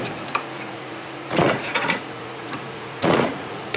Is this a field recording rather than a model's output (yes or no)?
no